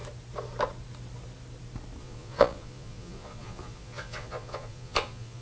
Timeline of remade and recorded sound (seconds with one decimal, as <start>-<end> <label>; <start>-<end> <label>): 0.0-2.0 recorded; 2.0-5.4 remade